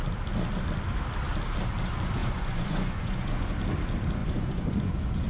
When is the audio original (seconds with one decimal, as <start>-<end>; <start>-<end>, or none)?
0.0-2.2; 3.5-4.2

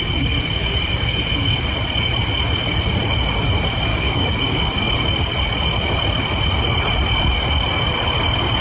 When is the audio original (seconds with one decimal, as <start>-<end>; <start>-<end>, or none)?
0.0-3.9; 4.8-8.6

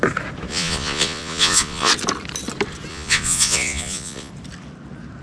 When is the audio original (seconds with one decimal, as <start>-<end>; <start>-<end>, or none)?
0.0-0.5; 1.9-2.9; 4.3-5.2

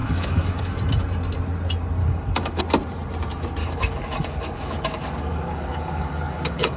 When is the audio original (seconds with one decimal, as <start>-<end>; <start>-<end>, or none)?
0.7-2.0; 2.6-3.6

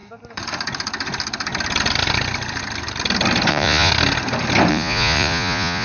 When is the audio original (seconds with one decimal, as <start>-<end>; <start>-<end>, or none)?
0.0-3.5; 3.9-4.7

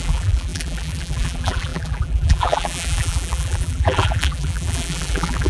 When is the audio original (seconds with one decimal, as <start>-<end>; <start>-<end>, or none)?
none

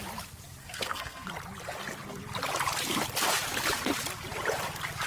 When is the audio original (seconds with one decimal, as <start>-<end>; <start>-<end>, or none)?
0.0-0.6; 1.3-5.1